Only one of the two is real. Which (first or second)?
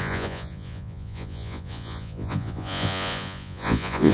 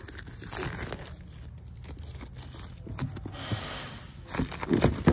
second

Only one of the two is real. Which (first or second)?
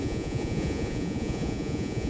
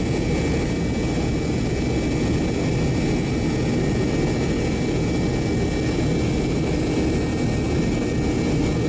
second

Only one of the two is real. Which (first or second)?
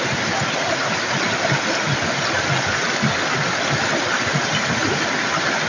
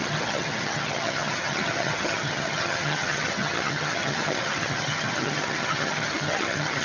first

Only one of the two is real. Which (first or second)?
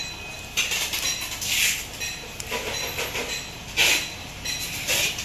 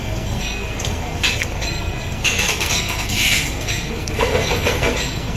first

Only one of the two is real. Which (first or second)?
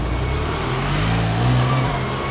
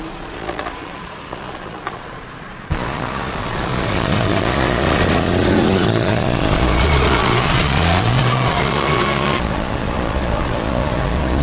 first